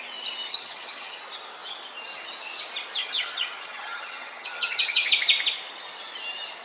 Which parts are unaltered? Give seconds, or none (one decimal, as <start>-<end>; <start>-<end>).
0.0-0.5; 1.2-3.0; 5.1-6.6

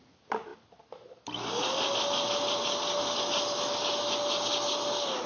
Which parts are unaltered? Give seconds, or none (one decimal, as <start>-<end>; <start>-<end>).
0.0-5.3

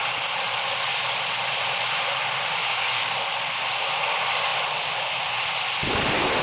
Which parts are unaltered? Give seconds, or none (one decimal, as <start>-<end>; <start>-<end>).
0.0-2.6; 3.1-6.4

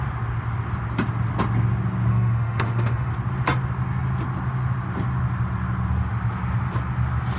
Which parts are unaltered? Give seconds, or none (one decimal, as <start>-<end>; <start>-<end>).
0.0-2.1; 3.1-7.4